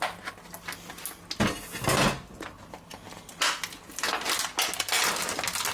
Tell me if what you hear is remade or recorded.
recorded